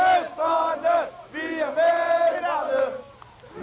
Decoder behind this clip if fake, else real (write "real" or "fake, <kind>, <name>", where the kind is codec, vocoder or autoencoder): real